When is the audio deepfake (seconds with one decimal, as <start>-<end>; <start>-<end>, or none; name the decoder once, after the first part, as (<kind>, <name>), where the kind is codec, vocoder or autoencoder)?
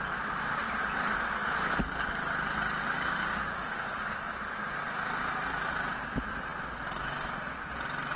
2.8-4.3 (codec, DAC)